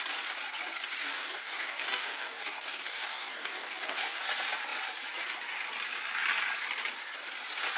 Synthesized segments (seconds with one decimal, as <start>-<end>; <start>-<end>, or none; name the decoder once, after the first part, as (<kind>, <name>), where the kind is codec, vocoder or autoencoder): 1.0-4.2 (codec, DAC)